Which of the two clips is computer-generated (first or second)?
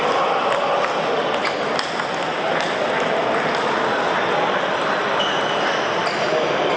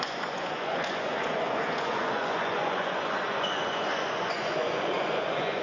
second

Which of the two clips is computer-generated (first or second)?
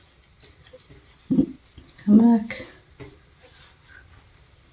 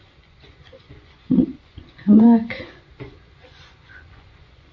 second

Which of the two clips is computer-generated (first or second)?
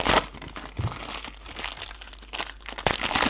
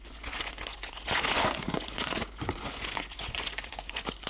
second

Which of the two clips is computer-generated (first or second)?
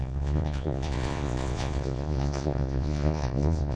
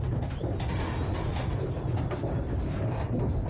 first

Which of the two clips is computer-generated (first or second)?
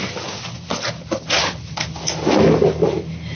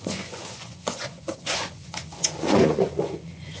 second